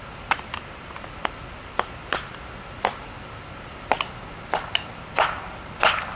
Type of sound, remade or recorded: recorded